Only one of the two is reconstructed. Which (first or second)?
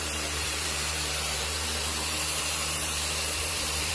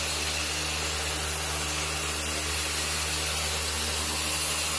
first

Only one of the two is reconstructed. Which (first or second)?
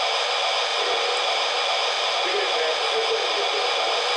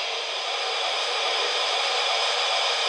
second